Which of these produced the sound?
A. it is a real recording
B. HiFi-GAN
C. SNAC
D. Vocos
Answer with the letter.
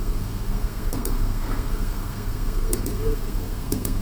C